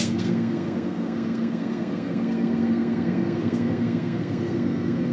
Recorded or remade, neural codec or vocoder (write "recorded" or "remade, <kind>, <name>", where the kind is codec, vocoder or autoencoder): remade, codec, SNAC